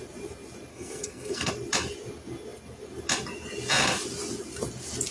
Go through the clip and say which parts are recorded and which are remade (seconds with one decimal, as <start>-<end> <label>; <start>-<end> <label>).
0.0-0.7 recorded; 0.7-1.5 remade; 1.5-5.1 recorded